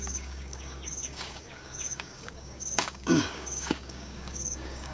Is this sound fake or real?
fake